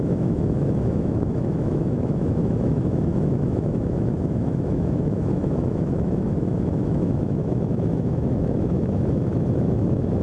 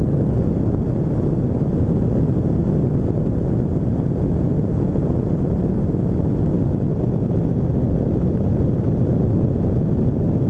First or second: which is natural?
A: second